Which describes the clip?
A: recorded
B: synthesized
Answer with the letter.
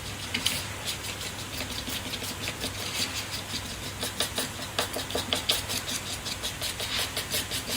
A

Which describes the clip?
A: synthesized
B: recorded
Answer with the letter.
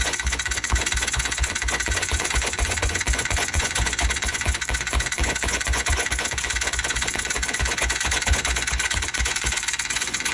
A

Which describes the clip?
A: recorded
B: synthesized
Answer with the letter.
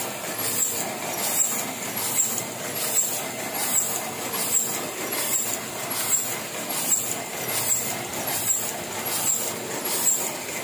A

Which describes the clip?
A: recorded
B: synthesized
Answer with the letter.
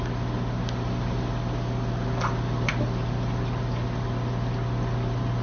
A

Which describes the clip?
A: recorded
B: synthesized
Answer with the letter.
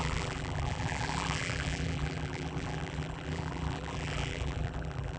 B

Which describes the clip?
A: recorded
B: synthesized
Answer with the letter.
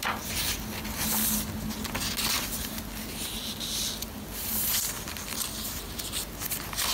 A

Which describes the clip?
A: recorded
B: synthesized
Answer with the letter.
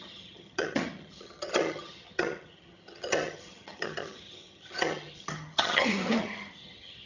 B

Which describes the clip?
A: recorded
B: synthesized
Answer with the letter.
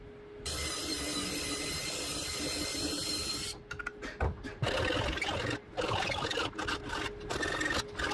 A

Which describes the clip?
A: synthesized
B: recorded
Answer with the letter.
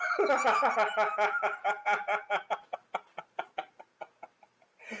B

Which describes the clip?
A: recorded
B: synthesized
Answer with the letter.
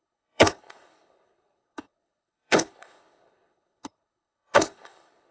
B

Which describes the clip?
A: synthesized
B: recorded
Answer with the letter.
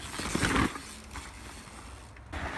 B